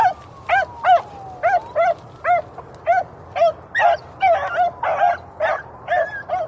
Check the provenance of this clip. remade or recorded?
recorded